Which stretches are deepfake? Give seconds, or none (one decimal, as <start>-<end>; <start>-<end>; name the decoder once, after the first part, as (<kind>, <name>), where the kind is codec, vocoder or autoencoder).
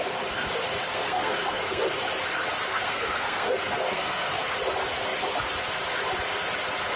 0.9-1.8 (codec, SNAC); 2.7-4.4